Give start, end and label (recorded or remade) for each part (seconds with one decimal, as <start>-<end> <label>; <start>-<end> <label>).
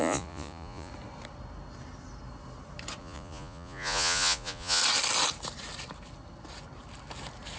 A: 0.0-0.9 remade; 0.9-3.0 recorded; 3.0-4.8 remade; 4.8-7.6 recorded